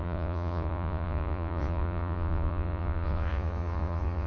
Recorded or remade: remade